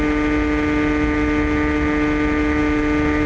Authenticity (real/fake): real